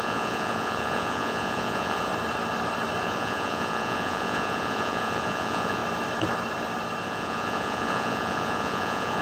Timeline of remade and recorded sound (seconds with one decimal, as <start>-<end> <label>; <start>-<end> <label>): 0.0-2.1 remade; 2.1-3.0 recorded; 3.0-5.8 remade; 5.8-7.0 recorded; 7.0-9.2 remade